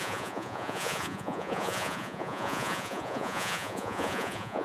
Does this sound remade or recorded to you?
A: remade